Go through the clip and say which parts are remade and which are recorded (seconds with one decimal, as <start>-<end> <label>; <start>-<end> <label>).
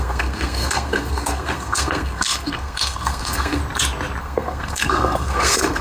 0.0-3.6 remade; 3.6-4.2 recorded; 4.2-5.8 remade